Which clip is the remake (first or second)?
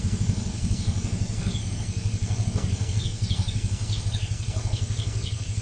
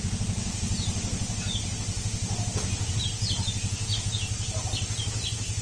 first